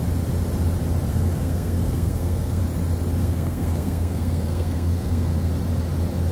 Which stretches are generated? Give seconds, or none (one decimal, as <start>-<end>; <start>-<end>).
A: 1.1-2.6; 3.2-5.5